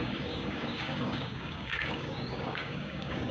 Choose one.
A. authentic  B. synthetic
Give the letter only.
B